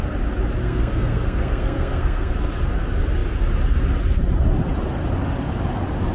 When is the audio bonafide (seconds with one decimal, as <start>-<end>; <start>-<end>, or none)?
0.0-0.6; 2.3-6.1